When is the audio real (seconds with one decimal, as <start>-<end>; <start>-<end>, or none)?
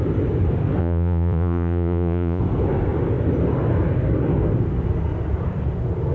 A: 0.0-0.8; 2.4-6.1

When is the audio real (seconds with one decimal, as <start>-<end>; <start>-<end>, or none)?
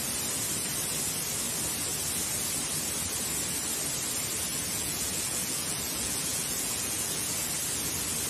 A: 0.0-4.5; 7.5-8.3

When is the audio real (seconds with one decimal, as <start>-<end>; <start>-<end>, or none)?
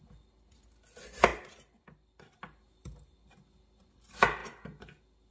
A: 0.0-5.3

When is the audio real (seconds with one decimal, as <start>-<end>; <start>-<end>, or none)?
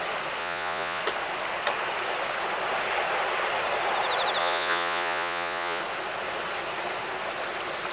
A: 0.0-0.4; 1.0-4.4; 5.8-7.9